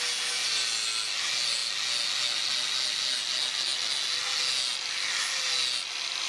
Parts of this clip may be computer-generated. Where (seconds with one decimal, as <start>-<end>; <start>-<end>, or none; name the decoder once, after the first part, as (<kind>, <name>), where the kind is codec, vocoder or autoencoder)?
none

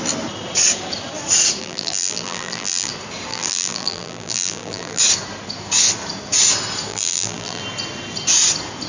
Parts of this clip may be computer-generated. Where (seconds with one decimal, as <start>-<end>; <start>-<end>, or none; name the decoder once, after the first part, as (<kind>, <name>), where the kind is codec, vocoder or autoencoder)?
1.6-2.9 (vocoder, BigVGAN v2); 3.3-5.0; 6.9-7.6

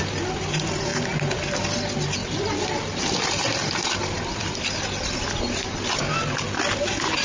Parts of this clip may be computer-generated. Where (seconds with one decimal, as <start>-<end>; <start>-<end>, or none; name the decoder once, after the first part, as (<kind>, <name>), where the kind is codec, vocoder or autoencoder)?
2.2-6.0 (vocoder, BigVGAN v2)